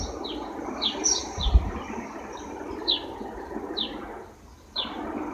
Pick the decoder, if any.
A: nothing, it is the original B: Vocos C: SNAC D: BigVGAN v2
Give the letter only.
A